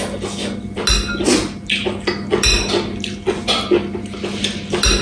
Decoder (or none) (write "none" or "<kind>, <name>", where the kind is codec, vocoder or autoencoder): none